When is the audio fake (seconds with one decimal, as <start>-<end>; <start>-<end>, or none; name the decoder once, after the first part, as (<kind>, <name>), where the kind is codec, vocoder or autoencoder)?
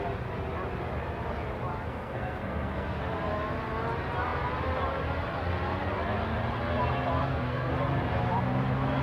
1.7-3.0 (codec, SNAC); 7.2-7.7